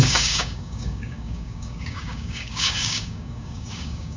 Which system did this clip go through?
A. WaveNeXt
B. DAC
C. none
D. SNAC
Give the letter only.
B